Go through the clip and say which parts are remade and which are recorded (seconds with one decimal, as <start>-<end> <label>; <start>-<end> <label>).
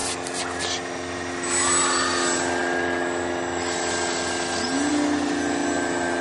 0.0-6.2 recorded